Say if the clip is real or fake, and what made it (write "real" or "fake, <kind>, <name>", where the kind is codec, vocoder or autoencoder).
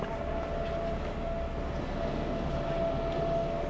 real